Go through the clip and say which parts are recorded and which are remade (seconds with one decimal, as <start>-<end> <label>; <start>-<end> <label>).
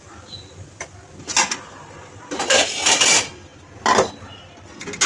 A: 0.0-5.1 recorded